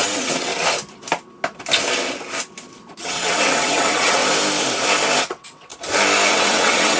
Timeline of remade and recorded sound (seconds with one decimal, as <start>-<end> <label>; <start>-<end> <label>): 0.0-0.5 remade; 0.5-3.0 recorded; 3.0-4.2 remade; 4.2-5.2 recorded; 5.2-5.7 remade; 5.7-6.3 recorded; 6.3-7.0 remade